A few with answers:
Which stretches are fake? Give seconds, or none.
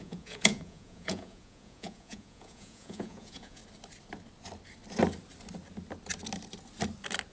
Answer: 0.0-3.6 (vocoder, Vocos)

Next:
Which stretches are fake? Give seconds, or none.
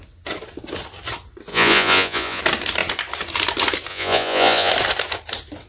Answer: 1.5-2.4 (vocoder, Vocos); 3.9-4.7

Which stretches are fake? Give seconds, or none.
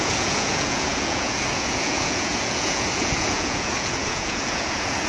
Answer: 0.0-5.1 (vocoder, Vocos)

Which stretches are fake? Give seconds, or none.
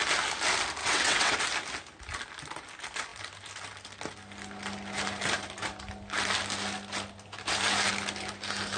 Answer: 0.8-1.4 (vocoder, WaveNeXt)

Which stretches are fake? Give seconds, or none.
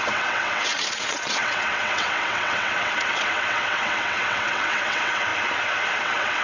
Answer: 0.0-5.3 (vocoder, WaveNeXt); 6.0-6.4